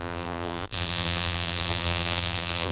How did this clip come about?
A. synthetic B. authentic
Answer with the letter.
A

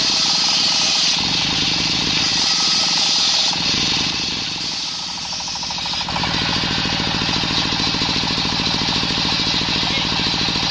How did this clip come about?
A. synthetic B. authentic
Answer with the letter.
B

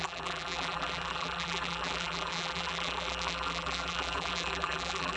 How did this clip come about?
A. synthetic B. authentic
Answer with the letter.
A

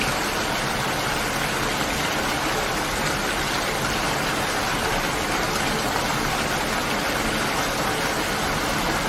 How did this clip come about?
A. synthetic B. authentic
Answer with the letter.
B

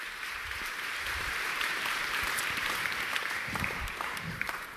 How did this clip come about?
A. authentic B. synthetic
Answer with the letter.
B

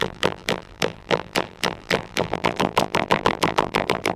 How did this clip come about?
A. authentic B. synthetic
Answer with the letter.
B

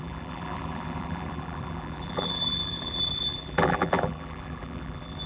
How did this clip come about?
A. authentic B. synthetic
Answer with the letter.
B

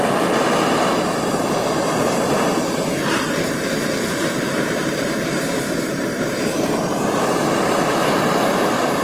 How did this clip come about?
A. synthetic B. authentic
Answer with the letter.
A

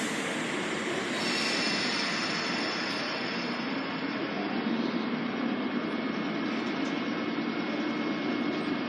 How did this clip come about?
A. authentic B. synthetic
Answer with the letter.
A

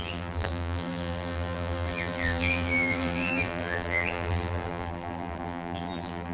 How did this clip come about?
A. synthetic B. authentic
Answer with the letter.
A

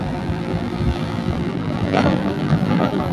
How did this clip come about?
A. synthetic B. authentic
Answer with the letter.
A